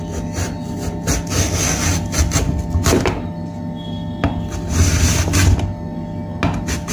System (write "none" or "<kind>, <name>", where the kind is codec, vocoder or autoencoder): none